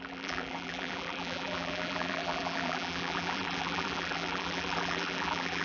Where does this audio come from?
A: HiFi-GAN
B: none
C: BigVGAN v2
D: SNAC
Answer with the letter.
C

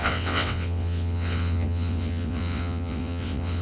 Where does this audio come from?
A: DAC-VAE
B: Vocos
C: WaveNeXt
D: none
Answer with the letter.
C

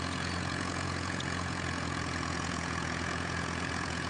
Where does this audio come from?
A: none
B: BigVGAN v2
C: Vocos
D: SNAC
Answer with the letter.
C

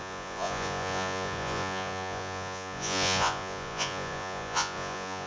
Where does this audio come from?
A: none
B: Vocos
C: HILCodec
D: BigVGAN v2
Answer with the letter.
B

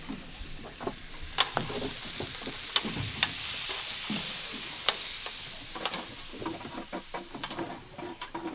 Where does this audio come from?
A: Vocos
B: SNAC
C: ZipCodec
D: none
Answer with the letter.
D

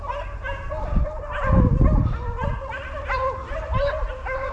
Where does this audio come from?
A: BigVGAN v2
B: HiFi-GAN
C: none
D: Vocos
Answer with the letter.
C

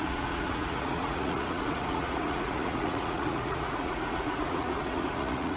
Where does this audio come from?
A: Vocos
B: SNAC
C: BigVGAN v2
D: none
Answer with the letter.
A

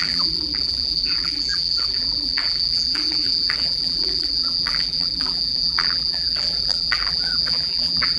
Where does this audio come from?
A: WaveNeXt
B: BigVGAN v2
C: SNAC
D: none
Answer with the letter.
B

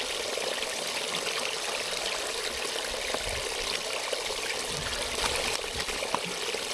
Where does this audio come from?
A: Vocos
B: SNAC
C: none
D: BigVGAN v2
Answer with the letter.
C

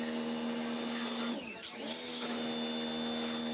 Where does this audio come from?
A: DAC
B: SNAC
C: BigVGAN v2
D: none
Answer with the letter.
D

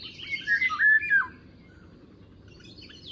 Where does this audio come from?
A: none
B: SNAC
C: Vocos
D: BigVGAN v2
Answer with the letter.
D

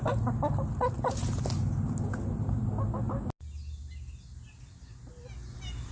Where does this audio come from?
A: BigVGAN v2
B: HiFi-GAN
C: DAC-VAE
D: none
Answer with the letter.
D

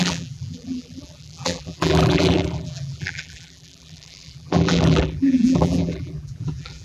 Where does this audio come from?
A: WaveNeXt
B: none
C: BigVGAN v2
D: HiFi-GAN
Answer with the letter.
C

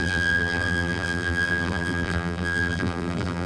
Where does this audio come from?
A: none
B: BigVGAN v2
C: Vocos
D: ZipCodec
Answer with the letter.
B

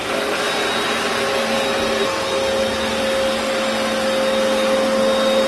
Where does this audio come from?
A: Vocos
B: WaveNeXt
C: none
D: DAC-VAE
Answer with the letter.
C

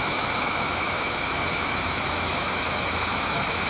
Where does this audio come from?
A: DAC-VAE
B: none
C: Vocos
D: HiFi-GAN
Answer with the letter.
A